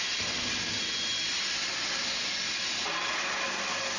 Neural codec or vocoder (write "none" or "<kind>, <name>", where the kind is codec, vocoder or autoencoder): none